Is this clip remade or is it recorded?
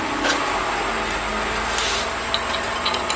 recorded